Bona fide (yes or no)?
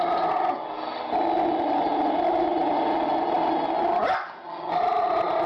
yes